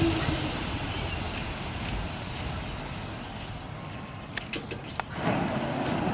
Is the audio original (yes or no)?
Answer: yes